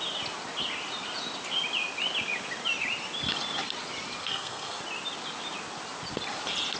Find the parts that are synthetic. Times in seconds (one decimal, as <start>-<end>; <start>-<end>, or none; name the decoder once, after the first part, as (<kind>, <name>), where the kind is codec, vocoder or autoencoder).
4.2-4.8 (codec, SNAC)